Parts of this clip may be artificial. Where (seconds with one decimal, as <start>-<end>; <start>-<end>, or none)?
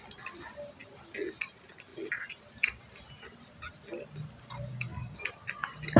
4.7-5.2